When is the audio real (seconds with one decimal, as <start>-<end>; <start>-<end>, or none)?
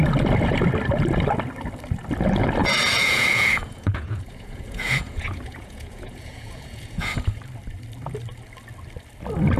0.0-2.6; 7.4-9.6